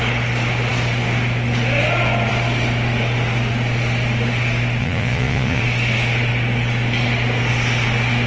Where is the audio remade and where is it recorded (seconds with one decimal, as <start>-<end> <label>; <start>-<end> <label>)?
0.0-4.8 recorded; 4.8-5.6 remade; 5.6-8.3 recorded